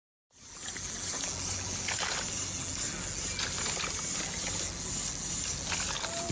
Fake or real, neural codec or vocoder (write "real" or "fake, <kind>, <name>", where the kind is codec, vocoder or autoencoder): real